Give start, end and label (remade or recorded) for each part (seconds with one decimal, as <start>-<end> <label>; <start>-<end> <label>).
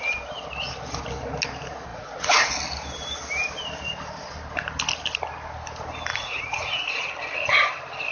0.0-1.9 recorded; 1.9-2.5 remade; 2.5-6.1 recorded; 6.1-6.9 remade; 6.9-8.1 recorded